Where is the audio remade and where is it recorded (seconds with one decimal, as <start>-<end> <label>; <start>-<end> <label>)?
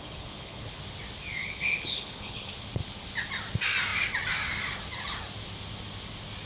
0.0-0.8 remade; 0.8-1.4 recorded; 1.4-2.5 remade; 2.5-6.5 recorded